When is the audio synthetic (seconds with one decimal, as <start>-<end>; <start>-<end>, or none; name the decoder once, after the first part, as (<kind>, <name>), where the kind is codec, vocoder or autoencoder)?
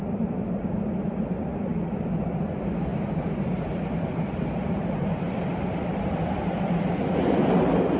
0.0-2.9 (vocoder, BigVGAN v2); 3.6-8.0